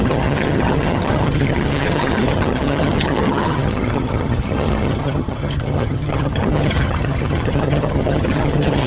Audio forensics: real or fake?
fake